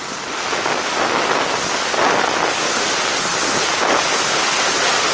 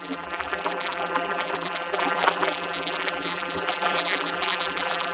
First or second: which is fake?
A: second